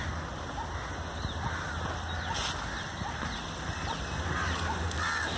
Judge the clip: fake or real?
real